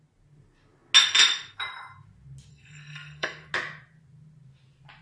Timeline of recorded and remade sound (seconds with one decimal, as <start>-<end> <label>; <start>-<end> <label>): 0.0-2.5 recorded; 2.5-3.5 remade; 3.5-5.0 recorded